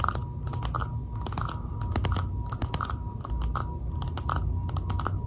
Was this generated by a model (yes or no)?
no